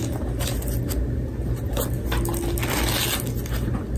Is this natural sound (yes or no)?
yes